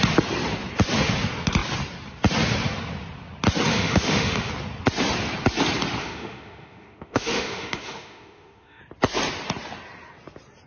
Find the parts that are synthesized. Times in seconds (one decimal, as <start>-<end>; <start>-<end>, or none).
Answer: 3.7-4.5; 6.0-8.8